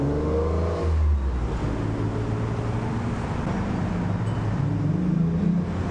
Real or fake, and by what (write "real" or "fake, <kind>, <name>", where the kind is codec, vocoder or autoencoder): real